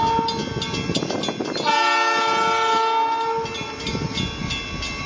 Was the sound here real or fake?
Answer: real